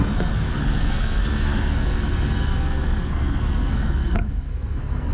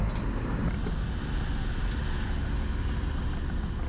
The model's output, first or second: first